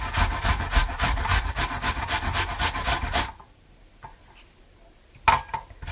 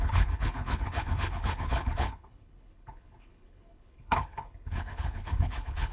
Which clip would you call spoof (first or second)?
second